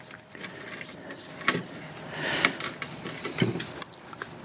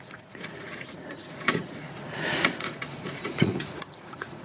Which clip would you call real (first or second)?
first